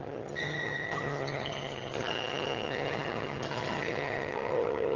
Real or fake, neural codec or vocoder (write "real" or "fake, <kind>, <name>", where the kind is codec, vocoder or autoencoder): fake, vocoder, HiFi-GAN